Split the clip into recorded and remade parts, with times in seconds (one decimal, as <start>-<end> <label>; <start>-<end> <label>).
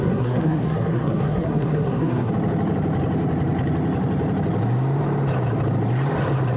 0.0-2.3 remade; 2.3-6.6 recorded